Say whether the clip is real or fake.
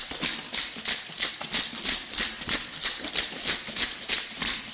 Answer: fake